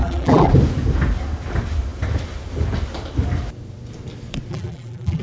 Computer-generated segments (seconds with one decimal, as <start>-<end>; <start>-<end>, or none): 0.0-0.5; 4.5-5.2